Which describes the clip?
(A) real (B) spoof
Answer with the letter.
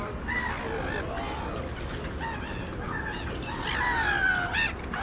A